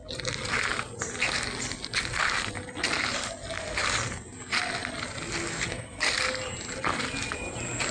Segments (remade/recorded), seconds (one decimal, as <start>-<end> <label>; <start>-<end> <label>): 0.0-7.9 recorded